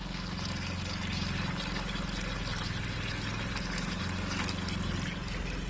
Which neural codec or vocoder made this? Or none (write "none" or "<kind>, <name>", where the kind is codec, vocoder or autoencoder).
none